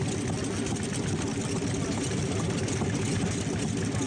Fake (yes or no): no